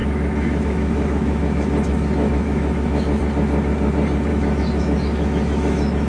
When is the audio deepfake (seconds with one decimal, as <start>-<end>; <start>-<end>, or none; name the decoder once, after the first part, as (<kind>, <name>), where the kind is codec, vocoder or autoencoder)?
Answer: 0.0-3.2 (autoencoder, DAC-VAE); 4.3-6.1